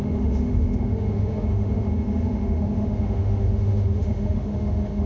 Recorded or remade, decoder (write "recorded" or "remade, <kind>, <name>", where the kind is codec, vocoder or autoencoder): remade, autoencoder, DAC-VAE